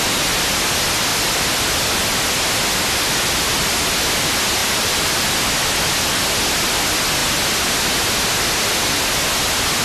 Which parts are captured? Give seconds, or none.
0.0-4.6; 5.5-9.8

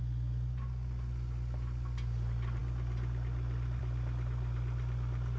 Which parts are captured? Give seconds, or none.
0.0-5.4

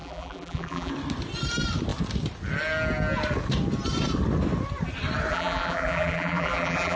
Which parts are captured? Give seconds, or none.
0.9-5.3

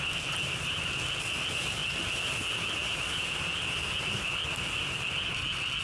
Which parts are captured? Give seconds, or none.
0.0-5.8

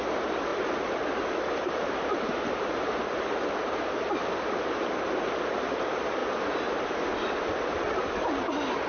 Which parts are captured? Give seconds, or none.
0.0-0.5; 4.9-6.2; 6.9-8.9

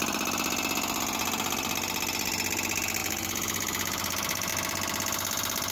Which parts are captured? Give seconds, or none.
0.0-3.0; 4.5-5.7

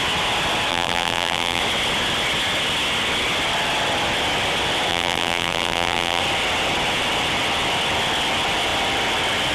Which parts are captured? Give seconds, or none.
0.0-0.7; 1.6-4.9; 6.2-9.5